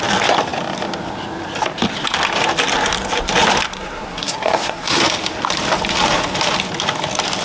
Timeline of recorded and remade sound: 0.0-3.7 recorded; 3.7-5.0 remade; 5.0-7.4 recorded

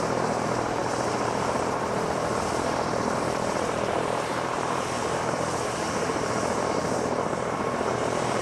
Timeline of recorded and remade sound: 0.0-8.4 remade

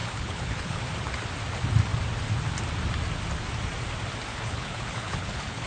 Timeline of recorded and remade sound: 0.0-0.8 remade; 0.8-4.3 recorded; 4.3-5.7 remade

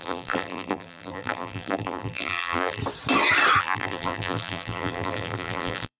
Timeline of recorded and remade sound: 0.0-2.8 remade; 2.8-3.6 recorded; 3.6-6.0 remade